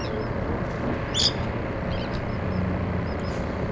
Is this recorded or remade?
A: recorded